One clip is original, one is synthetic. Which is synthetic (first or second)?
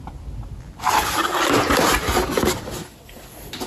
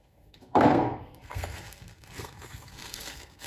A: second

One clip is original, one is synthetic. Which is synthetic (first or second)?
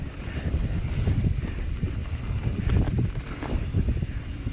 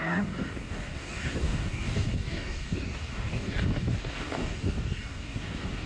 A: second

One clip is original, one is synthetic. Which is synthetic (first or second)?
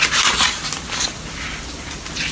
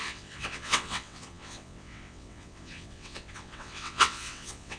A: second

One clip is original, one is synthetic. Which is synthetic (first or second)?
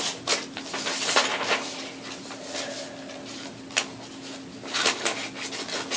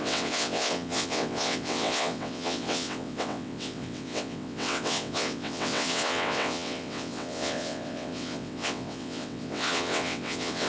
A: second